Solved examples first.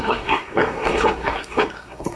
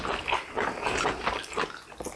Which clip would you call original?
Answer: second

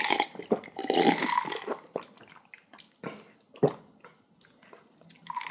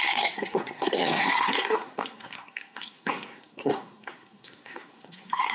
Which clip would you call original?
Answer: first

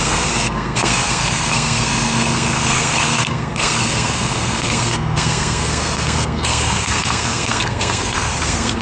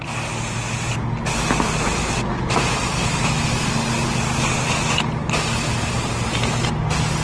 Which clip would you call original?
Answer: second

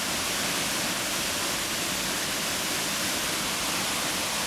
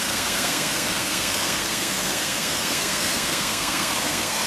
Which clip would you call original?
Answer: first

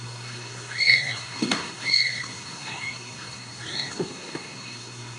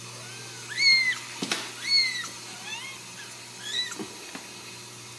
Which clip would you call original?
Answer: second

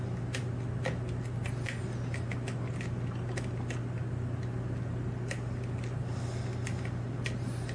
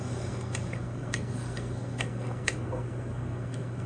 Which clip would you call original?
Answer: first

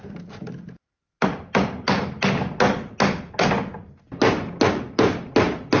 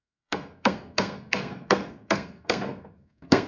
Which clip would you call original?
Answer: first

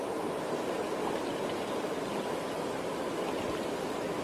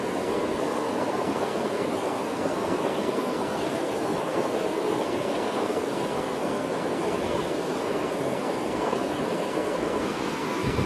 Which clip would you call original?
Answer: first